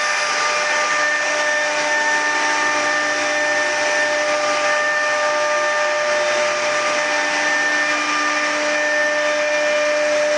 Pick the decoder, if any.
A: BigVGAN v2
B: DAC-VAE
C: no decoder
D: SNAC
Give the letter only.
C